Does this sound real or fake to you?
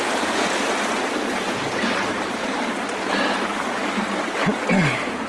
real